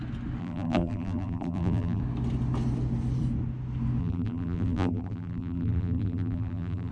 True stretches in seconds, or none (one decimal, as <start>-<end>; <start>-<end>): 0.0-0.4; 2.0-4.0